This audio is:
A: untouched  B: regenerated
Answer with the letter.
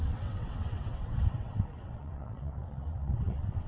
B